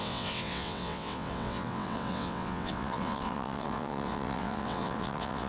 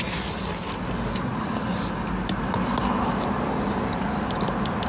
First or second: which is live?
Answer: second